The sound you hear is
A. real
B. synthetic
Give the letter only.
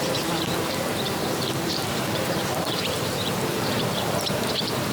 B